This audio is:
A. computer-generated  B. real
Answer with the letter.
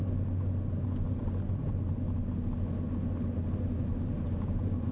B